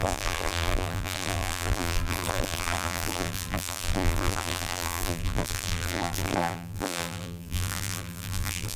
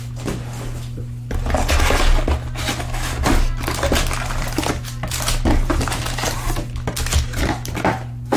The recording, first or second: second